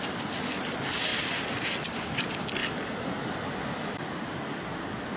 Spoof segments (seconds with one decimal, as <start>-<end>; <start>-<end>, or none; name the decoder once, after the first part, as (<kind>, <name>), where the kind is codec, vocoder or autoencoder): 1.1-2.1 (vocoder, BigVGAN v2)